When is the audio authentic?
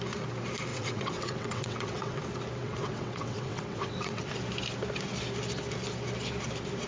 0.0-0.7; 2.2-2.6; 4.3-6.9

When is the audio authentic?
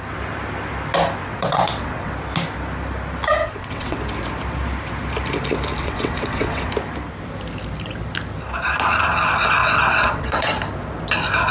0.0-1.2; 2.1-3.4; 4.0-5.8; 6.7-9.6; 10.5-11.5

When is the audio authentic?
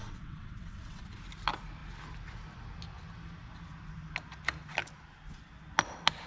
1.1-6.3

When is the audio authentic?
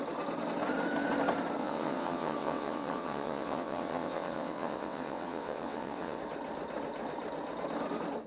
0.0-1.6; 6.2-8.3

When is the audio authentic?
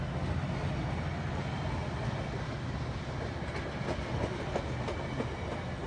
0.0-5.9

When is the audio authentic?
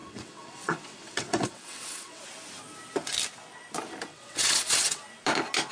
2.2-4.1; 5.0-5.7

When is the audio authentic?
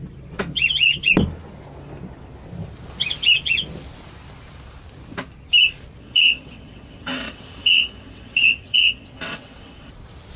0.0-6.0; 9.9-10.4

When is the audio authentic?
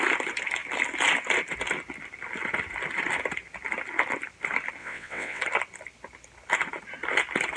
0.0-4.8; 5.4-7.6